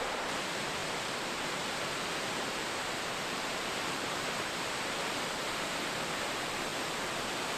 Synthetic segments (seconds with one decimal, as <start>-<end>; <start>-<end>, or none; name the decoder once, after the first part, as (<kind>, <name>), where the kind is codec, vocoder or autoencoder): 0.0-7.6 (vocoder, BigVGAN v2)